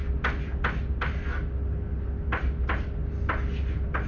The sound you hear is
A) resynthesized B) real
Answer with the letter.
B